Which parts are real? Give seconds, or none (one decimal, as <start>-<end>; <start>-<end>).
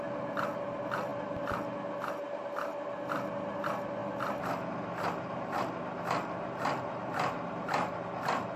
0.0-8.6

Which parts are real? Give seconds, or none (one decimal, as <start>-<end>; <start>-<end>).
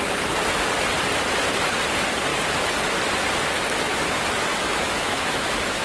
0.0-4.5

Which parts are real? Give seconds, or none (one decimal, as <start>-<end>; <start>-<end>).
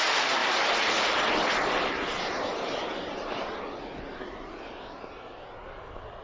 0.0-0.4; 4.1-6.2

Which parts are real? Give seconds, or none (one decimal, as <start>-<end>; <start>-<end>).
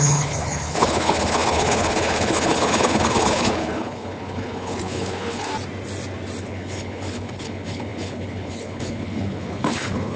5.5-6.4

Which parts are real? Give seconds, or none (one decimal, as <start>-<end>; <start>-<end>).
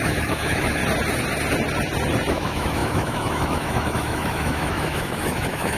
0.8-2.3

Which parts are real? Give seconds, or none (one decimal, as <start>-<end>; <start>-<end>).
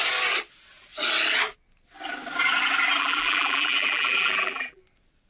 0.0-3.0; 4.8-5.3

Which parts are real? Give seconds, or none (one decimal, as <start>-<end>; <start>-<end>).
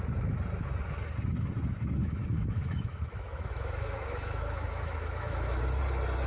0.0-2.0; 5.8-6.3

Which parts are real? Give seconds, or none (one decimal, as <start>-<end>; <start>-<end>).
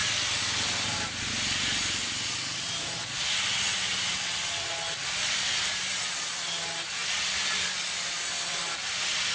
0.0-9.3